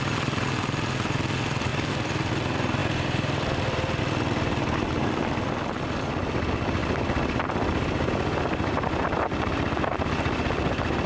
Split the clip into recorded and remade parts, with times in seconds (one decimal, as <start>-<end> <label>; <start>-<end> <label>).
0.0-1.7 recorded; 1.7-2.3 remade; 2.3-2.8 recorded; 2.8-4.0 remade; 4.0-6.8 recorded; 6.8-8.1 remade; 8.1-11.1 recorded